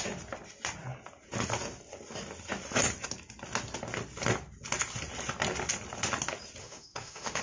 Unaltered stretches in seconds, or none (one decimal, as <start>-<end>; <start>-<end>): 0.0-6.6